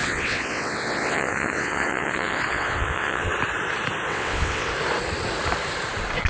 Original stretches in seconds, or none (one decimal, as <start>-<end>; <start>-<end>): 3.3-4.1; 4.7-6.3

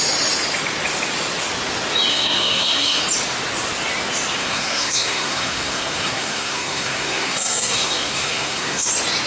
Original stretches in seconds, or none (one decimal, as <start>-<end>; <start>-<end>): 0.0-2.1; 3.0-4.4; 8.9-9.3